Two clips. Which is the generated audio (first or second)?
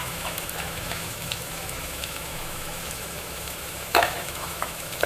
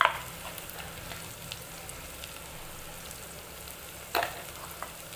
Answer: first